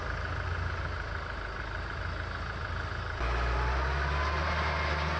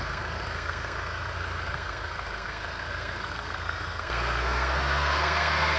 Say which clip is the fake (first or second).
second